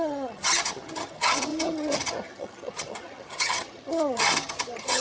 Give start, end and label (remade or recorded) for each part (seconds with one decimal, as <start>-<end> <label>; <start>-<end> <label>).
0.0-5.0 remade

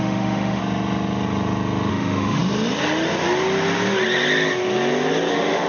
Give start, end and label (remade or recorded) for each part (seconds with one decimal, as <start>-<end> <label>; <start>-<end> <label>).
0.0-0.6 remade; 0.6-1.9 recorded; 1.9-2.4 remade; 2.4-5.3 recorded; 5.3-5.7 remade

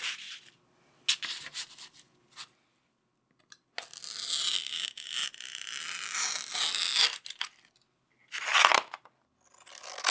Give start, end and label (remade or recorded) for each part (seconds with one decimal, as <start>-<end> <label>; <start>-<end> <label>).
0.0-10.1 recorded

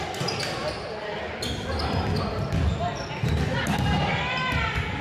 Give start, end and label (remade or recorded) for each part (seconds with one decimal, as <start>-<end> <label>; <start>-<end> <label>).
0.0-5.0 recorded

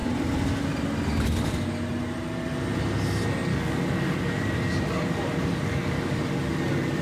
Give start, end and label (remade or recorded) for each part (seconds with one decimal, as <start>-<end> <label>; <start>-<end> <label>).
0.0-3.5 recorded; 3.5-7.0 remade

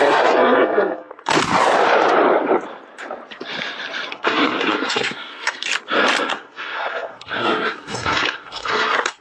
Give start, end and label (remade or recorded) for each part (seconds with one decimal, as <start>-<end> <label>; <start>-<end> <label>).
0.0-1.3 remade; 1.3-4.1 recorded; 4.1-5.7 remade; 5.7-6.3 recorded; 6.3-9.2 remade

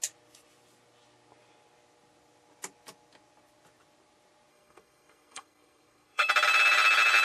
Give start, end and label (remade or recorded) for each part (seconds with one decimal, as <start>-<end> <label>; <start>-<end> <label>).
0.0-4.5 recorded; 4.5-6.3 remade; 6.3-7.2 recorded

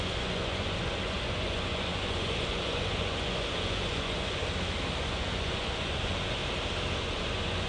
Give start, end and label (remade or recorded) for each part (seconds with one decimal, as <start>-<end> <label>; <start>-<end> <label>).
0.0-4.4 remade; 4.4-5.0 recorded; 5.0-6.4 remade; 6.4-7.0 recorded; 7.0-7.7 remade